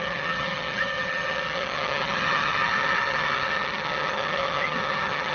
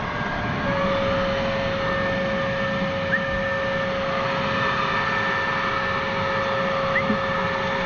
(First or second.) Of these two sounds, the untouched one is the second